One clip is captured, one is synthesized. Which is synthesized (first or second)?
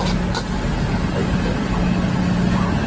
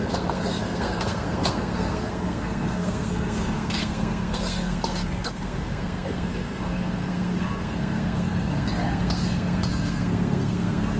second